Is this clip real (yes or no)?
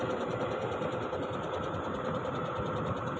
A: yes